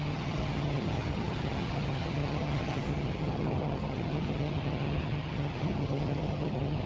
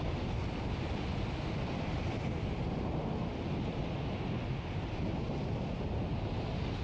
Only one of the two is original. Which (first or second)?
second